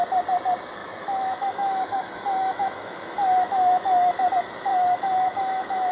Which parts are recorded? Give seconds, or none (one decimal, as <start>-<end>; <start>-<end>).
0.0-0.8; 4.3-4.7